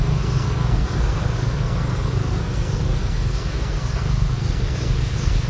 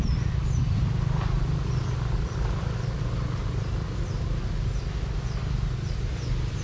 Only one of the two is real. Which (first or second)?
second